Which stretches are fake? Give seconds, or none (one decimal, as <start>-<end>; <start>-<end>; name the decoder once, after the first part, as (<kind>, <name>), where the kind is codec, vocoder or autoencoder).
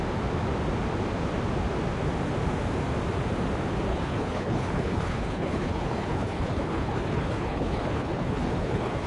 3.9-9.1 (codec, HILCodec)